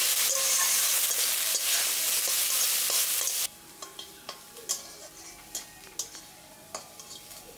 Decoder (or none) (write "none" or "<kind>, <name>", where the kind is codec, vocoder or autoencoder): none